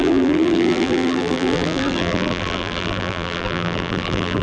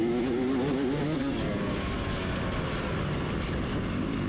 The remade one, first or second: first